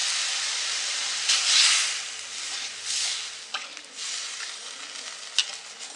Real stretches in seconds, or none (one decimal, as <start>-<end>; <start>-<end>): 0.6-6.0

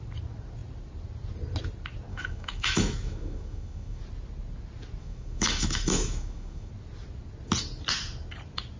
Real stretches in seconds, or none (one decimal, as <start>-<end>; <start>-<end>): 0.0-2.1; 4.0-5.0; 6.7-8.8

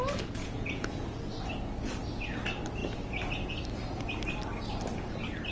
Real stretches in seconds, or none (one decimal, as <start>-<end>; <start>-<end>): 0.0-0.4; 1.0-5.5

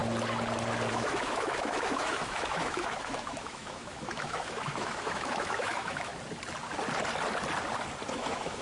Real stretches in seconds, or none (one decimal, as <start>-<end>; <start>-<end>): 0.0-0.9; 6.1-8.1

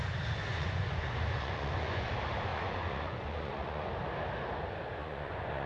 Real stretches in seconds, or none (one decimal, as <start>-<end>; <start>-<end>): 0.0-0.5; 2.1-2.5; 3.9-5.0